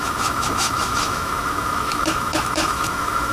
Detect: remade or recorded remade